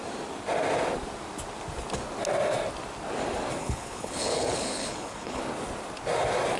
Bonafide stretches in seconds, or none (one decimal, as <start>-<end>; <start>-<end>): 0.0-3.6; 5.4-6.6